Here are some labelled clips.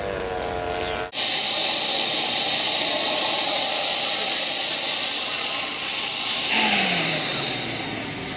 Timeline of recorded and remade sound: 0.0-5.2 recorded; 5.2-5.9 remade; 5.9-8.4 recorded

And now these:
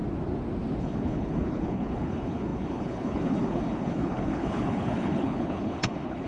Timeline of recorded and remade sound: 0.0-0.8 recorded; 0.8-6.3 remade